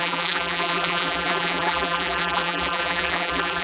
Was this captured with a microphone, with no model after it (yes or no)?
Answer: no